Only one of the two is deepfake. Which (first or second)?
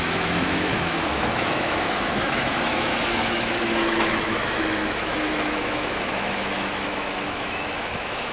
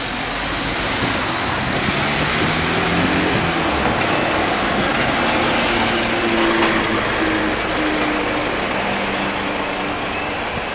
first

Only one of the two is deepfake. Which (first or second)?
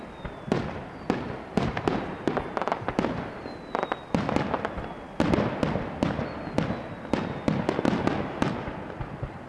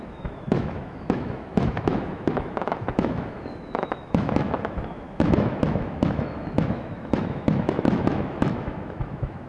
second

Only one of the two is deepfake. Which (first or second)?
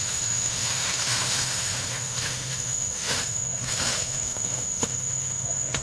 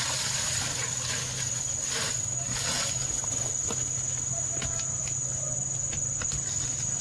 first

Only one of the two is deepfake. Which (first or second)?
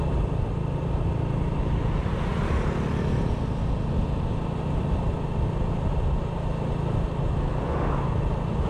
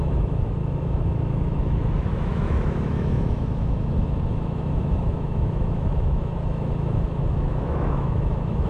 second